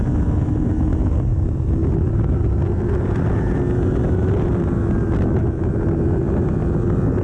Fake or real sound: real